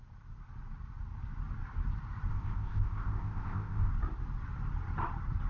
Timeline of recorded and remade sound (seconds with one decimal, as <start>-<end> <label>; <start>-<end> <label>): 0.0-2.3 recorded; 2.3-3.9 remade; 3.9-5.5 recorded